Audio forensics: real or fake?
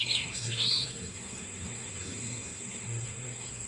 fake